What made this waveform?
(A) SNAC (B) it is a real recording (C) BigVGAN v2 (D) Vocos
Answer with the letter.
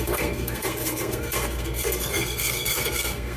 A